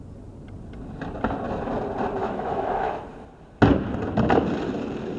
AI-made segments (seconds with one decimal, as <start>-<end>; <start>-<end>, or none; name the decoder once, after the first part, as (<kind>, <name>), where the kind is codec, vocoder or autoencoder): 2.2-3.0 (autoencoder, DAC-VAE)